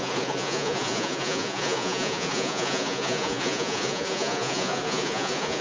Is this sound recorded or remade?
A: remade